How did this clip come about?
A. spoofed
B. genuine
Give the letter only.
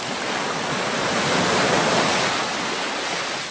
B